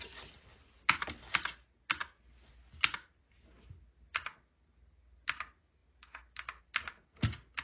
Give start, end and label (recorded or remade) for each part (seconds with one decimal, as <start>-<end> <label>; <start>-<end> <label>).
0.0-7.6 recorded